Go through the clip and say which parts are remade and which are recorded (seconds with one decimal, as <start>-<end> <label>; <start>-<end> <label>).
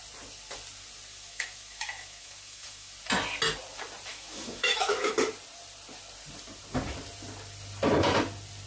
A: 0.0-1.1 recorded; 1.1-2.9 remade; 2.9-4.1 recorded; 4.1-5.1 remade; 5.1-8.7 recorded